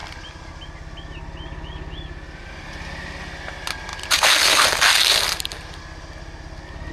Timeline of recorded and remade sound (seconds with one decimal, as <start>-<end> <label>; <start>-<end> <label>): 0.0-0.5 remade; 0.5-3.9 recorded; 3.9-5.8 remade; 5.8-6.9 recorded